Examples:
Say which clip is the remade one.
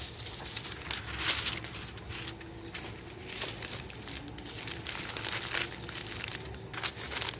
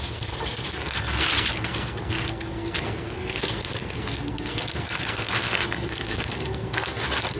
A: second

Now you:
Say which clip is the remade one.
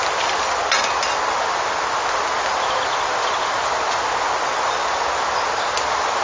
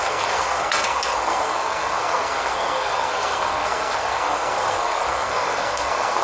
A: second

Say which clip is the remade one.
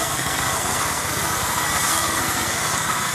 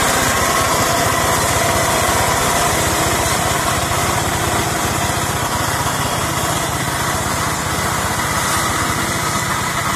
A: first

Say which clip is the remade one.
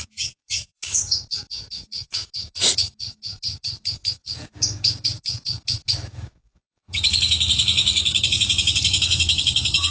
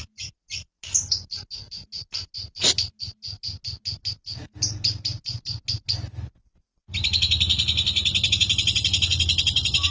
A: first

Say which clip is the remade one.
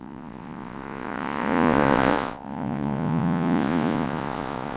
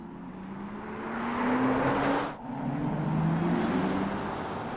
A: first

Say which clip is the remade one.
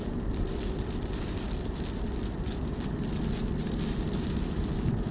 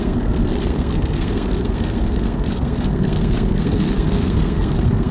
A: second